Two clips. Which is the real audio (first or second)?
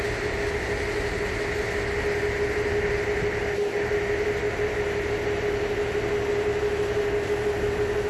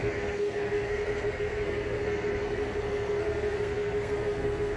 first